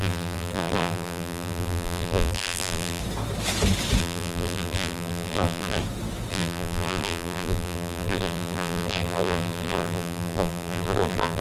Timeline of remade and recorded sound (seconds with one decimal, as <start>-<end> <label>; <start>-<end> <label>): 0.0-3.0 remade; 3.0-4.0 recorded; 4.0-5.8 remade; 5.8-6.3 recorded; 6.3-11.4 remade